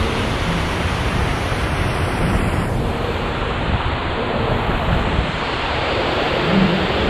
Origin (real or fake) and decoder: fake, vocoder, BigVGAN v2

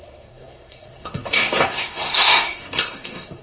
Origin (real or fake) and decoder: fake, codec, SNAC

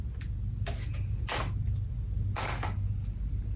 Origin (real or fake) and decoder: real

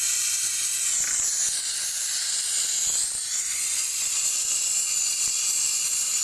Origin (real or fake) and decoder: real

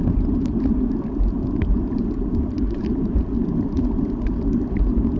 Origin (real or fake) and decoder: real